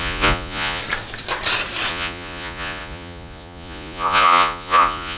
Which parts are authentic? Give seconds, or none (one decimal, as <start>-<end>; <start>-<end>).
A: 0.8-1.9